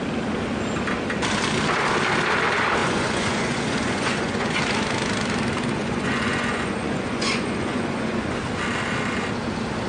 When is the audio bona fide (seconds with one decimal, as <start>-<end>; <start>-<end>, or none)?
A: 0.0-2.8; 4.6-5.8; 8.3-9.9